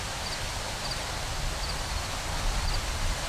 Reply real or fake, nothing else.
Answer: real